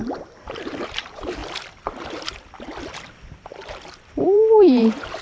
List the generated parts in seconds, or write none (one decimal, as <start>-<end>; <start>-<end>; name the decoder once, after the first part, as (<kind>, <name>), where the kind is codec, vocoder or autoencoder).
0.0-1.4 (vocoder, BigVGAN v2); 4.2-5.2

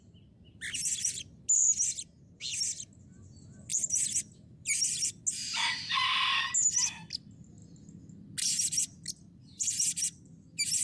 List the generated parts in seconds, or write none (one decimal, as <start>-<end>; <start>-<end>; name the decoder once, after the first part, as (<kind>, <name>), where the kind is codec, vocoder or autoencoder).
3.7-5.2 (vocoder, BigVGAN v2)

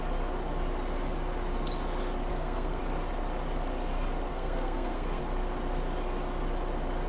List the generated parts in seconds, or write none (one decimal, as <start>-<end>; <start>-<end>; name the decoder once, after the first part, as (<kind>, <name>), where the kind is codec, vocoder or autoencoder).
2.3-2.8 (codec, SNAC); 4.3-5.2

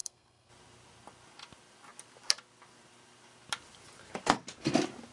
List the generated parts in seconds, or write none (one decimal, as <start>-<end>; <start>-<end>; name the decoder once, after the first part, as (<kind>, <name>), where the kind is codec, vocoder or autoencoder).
0.0-0.5 (codec, SNAC)

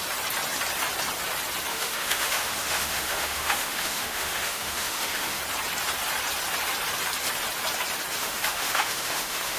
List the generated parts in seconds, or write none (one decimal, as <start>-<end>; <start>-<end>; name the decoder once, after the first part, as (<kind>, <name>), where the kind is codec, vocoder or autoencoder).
1.7-5.4 (autoencoder, DAC-VAE); 8.2-9.6